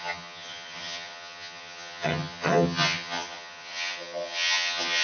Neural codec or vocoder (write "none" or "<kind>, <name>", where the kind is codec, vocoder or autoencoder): vocoder, HiFi-GAN